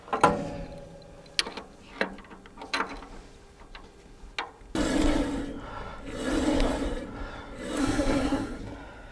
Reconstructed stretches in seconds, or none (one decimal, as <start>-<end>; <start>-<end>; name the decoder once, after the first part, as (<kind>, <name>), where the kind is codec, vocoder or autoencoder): 7.8-8.6 (codec, SNAC)